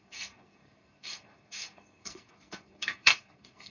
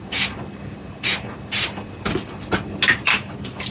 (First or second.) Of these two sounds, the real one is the second